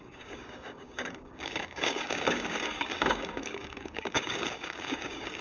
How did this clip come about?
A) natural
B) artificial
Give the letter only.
B